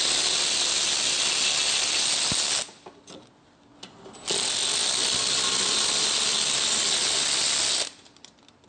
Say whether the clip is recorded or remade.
recorded